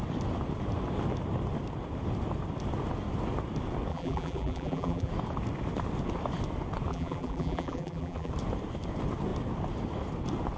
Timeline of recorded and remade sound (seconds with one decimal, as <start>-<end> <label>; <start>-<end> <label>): 0.0-3.9 recorded; 3.9-5.1 remade; 5.1-6.9 recorded; 6.9-8.3 remade; 8.3-10.6 recorded